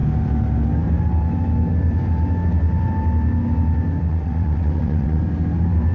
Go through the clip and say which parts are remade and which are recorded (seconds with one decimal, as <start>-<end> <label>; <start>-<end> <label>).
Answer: 0.0-4.1 recorded; 4.1-5.2 remade; 5.2-5.9 recorded